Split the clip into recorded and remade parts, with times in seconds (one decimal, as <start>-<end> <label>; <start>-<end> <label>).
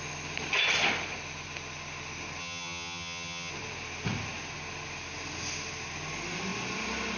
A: 0.0-2.4 recorded; 2.4-3.5 remade; 3.5-7.2 recorded